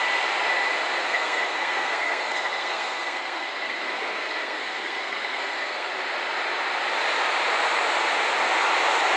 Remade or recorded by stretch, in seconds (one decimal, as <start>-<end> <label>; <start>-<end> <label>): 0.0-1.0 recorded; 1.0-5.9 remade; 5.9-9.2 recorded